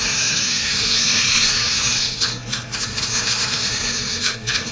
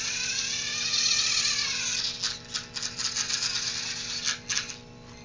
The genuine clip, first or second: second